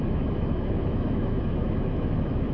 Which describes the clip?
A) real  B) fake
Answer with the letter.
B